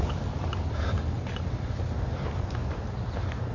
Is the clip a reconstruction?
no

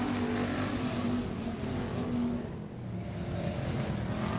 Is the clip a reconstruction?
no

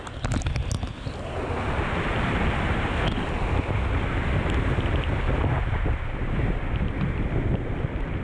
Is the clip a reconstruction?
no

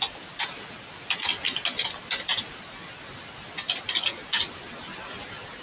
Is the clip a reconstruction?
no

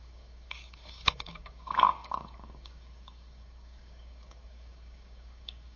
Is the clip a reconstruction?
yes